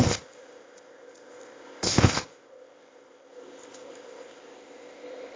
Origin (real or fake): fake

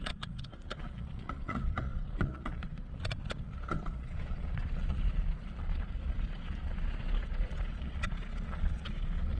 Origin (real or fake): fake